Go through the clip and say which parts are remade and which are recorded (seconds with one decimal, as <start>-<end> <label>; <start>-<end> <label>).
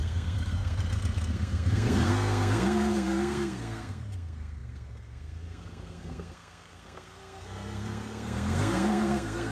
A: 0.0-9.5 remade